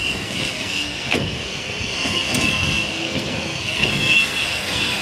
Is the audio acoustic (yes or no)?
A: no